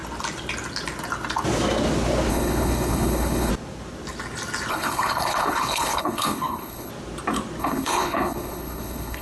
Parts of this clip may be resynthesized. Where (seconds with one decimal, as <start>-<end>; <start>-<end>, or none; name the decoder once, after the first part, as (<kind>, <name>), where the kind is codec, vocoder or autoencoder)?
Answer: 2.3-3.5 (codec, HILCodec); 4.7-6.9; 7.6-9.2